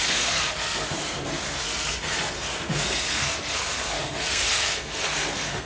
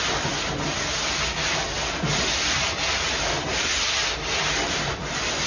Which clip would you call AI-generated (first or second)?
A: first